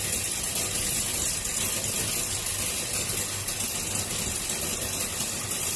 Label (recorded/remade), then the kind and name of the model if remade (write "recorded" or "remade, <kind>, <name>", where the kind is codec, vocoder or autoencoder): recorded